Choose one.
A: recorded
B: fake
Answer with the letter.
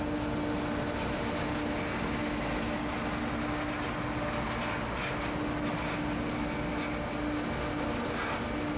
A